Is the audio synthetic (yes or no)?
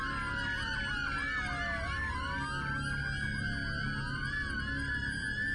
no